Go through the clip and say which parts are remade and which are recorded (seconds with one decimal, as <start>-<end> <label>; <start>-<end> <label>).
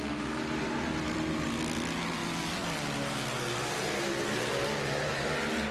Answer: 0.0-5.7 recorded